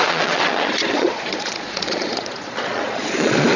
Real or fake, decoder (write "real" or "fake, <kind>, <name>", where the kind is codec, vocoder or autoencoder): fake, vocoder, Vocos